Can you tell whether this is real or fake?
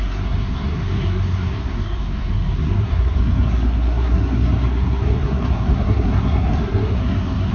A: fake